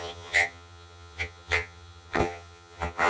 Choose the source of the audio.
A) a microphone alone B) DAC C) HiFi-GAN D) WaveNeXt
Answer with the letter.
C